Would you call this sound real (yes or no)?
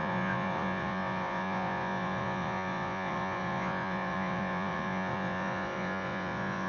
no